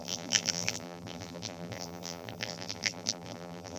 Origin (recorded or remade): remade